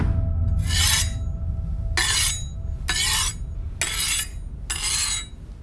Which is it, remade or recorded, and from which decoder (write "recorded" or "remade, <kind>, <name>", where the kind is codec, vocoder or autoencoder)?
recorded